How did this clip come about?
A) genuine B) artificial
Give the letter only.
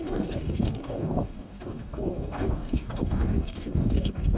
B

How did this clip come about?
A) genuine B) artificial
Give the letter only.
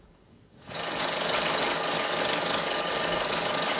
B